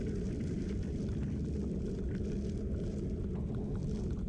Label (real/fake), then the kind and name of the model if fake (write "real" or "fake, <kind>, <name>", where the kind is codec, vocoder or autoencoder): real